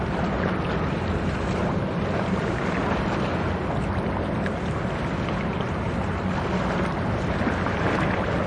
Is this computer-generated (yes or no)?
no